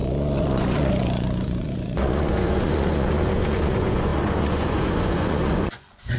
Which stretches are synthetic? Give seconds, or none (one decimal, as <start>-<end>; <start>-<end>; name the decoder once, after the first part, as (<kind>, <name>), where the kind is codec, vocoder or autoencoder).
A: 0.0-6.2 (vocoder, Vocos)